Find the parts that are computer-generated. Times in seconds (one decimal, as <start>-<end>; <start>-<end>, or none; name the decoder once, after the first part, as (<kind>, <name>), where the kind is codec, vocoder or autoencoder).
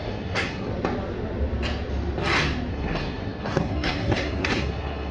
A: 0.0-0.7 (codec, SNAC); 2.7-5.1